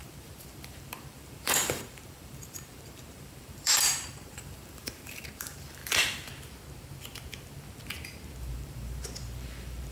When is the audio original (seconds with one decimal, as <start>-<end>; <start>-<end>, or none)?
5.8-8.5